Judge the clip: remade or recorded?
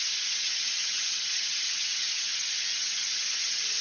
remade